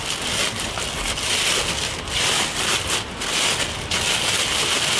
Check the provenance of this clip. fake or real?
real